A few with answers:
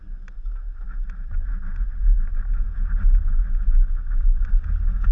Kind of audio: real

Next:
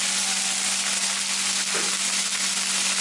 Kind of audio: real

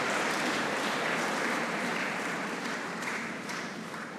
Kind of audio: fake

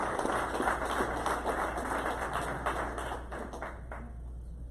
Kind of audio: real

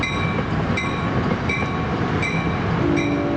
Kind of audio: real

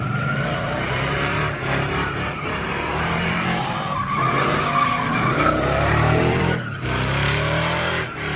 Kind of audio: fake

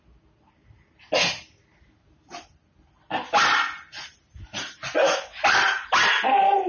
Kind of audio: real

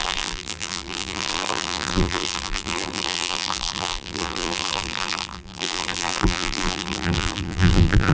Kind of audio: fake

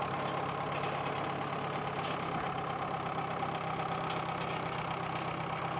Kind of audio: real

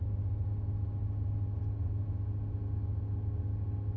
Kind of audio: real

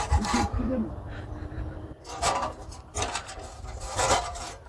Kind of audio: fake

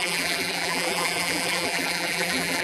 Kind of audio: fake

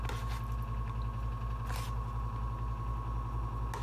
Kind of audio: real